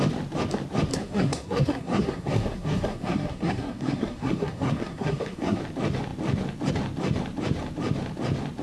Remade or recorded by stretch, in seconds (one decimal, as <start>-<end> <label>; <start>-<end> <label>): 0.0-0.9 recorded; 0.9-5.6 remade; 5.6-8.6 recorded